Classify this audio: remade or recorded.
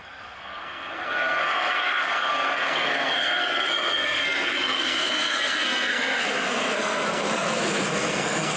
remade